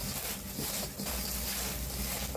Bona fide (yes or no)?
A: yes